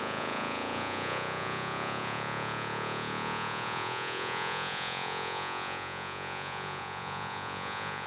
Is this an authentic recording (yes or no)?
no